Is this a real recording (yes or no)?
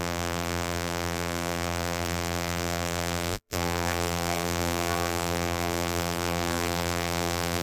no